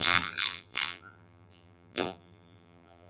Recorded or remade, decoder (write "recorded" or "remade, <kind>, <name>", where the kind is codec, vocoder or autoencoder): remade, vocoder, BigVGAN v2